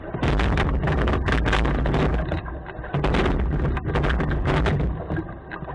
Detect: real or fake real